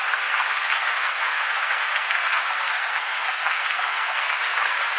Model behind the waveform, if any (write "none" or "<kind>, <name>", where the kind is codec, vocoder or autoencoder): codec, SNAC